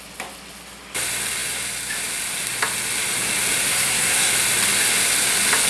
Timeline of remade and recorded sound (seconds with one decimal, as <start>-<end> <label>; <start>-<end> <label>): 0.0-3.7 recorded; 3.7-4.3 remade; 4.3-5.7 recorded